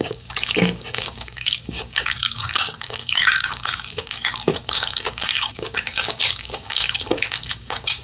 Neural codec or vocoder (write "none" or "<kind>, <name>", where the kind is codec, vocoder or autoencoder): codec, DAC